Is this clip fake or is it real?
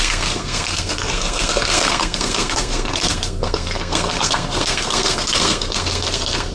fake